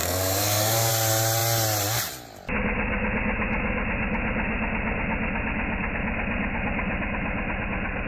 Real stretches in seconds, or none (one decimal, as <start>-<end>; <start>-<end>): 0.9-8.1